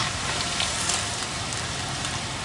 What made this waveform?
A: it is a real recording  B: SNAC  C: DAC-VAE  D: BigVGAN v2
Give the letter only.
A